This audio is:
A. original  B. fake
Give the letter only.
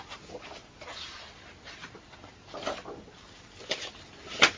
A